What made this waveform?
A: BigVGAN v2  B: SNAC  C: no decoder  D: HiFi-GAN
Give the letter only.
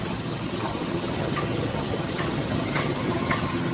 D